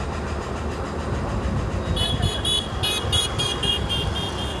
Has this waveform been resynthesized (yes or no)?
no